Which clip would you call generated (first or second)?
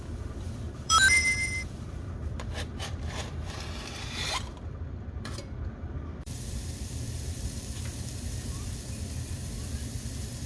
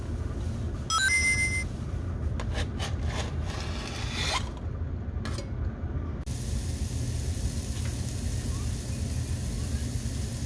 first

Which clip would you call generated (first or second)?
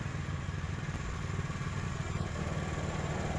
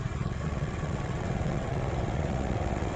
second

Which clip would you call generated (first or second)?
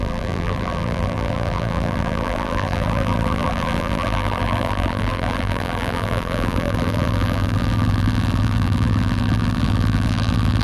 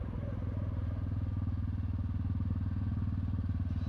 first